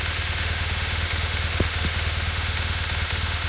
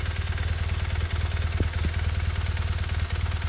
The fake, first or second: first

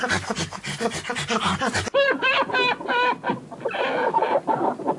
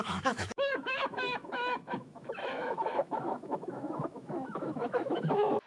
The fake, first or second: second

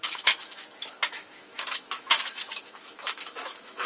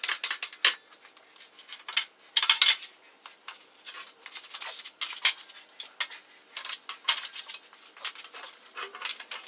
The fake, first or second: first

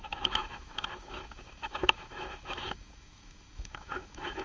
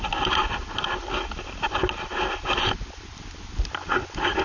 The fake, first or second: first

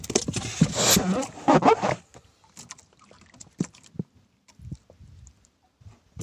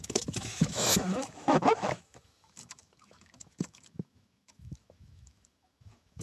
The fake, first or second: second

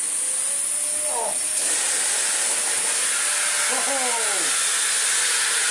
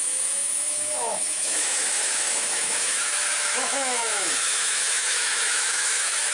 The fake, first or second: second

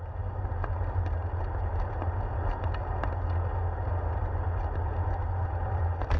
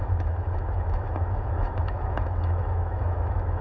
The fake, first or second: second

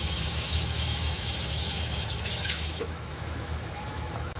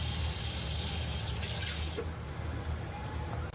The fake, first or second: first